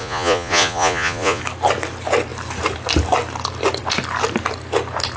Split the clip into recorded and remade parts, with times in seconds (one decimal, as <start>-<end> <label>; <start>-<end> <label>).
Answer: 0.0-1.4 remade; 1.4-5.2 recorded